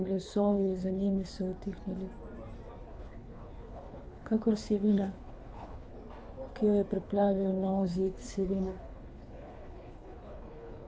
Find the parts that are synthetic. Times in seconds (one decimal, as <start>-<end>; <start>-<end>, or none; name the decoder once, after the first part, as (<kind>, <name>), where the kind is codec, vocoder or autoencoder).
0.0-1.3 (codec, HILCodec); 2.9-5.9; 7.0-10.9